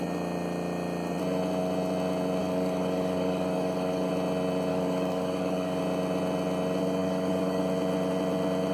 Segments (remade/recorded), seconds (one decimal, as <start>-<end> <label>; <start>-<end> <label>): 0.0-2.4 recorded; 2.4-4.1 remade; 4.1-4.7 recorded; 4.7-5.8 remade; 5.8-7.0 recorded; 7.0-7.6 remade; 7.6-8.7 recorded